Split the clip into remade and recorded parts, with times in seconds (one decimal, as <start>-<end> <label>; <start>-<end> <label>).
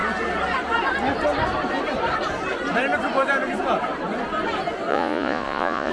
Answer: 0.0-4.9 recorded; 4.9-5.9 remade